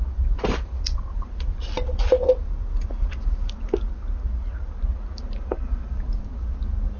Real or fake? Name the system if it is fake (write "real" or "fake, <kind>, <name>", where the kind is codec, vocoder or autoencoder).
real